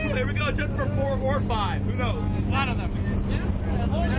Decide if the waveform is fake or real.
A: real